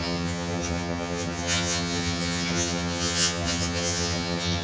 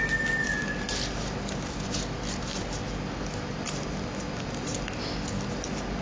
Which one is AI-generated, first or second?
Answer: first